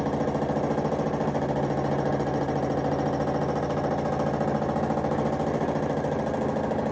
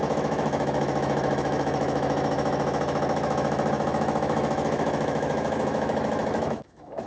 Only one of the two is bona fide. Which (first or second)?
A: first